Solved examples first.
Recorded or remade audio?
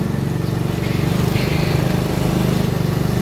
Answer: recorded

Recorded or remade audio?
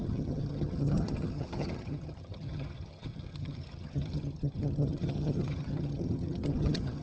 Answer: remade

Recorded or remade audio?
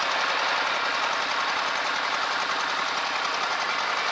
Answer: recorded